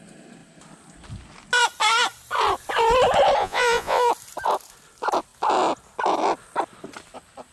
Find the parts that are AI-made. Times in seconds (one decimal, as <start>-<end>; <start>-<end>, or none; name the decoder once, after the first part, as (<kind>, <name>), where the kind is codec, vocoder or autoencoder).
3.4-4.1 (vocoder, Vocos)